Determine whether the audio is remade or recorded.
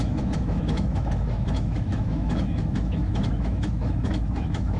remade